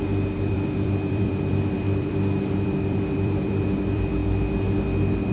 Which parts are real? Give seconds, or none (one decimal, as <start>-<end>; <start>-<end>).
4.2-5.3